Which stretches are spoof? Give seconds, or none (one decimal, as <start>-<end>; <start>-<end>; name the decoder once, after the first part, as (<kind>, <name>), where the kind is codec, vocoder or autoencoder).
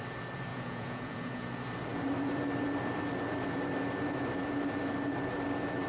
0.5-1.5 (vocoder, Vocos)